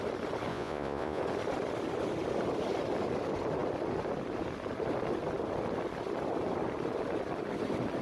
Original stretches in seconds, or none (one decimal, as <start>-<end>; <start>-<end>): 0.0-0.5; 1.2-8.0